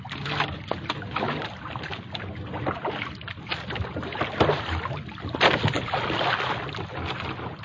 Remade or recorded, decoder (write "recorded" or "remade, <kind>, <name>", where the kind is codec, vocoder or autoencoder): recorded